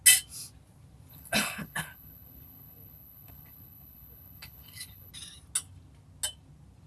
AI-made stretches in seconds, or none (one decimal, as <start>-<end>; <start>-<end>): 1.1-5.1